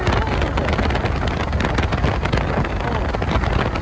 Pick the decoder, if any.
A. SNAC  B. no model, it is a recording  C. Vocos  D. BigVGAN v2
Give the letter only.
B